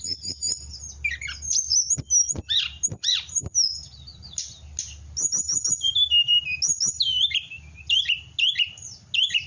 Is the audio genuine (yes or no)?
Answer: yes